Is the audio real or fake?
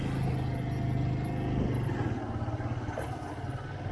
real